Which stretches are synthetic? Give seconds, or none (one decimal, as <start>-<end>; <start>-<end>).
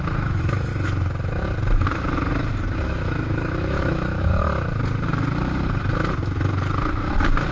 0.0-0.7; 2.8-4.3